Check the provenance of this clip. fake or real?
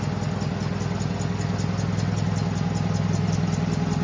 real